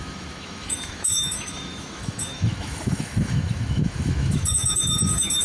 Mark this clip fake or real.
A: fake